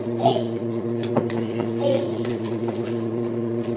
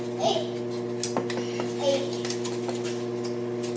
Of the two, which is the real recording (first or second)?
second